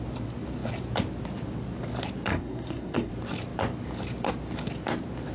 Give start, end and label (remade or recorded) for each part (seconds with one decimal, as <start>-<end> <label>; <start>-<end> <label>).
0.0-2.3 recorded; 2.3-3.1 remade; 3.1-5.3 recorded